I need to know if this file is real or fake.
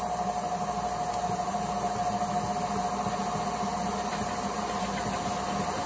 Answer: real